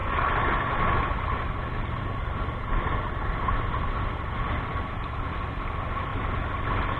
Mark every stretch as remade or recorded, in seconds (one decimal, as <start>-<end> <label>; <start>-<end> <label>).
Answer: 0.0-7.0 recorded